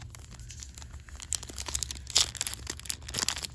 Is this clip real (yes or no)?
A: yes